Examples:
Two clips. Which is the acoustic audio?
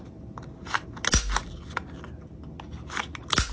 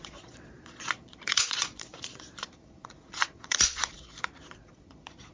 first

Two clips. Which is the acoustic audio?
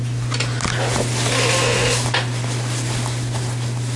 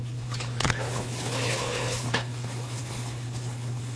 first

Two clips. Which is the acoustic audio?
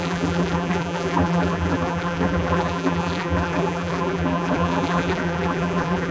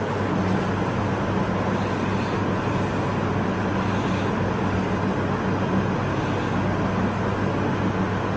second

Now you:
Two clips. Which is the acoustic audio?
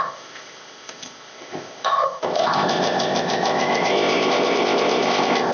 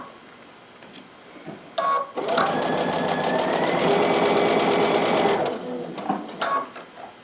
second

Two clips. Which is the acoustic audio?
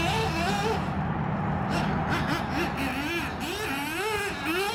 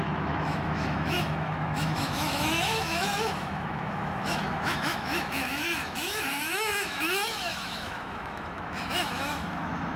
first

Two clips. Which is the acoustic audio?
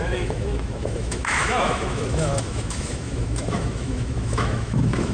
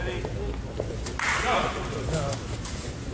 second